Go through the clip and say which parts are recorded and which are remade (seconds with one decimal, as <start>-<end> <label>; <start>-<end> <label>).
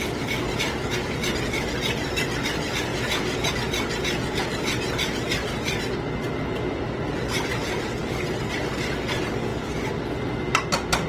0.0-2.9 recorded; 2.9-3.5 remade; 3.5-11.1 recorded